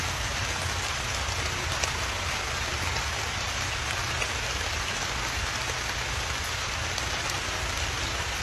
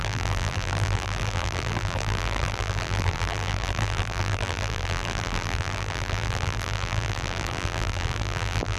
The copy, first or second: second